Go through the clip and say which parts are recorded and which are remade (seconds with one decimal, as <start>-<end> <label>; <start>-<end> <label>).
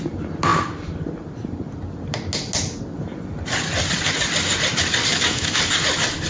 0.0-5.1 recorded; 5.1-5.6 remade; 5.6-6.3 recorded